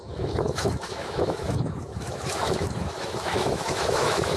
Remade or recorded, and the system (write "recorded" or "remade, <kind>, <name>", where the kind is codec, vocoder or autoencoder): remade, autoencoder, DAC-VAE